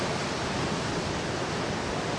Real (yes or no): yes